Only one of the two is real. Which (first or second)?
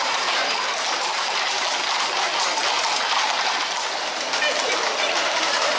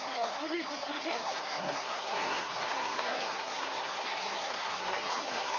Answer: first